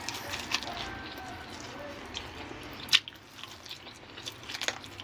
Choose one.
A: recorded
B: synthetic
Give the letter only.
A